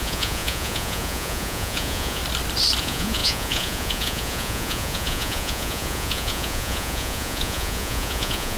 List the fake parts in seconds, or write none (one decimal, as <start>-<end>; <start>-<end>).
0.0-2.2; 2.8-8.6